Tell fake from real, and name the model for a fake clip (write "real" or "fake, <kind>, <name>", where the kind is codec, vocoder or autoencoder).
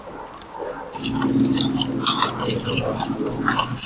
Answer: real